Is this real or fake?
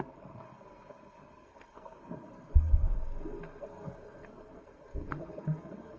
fake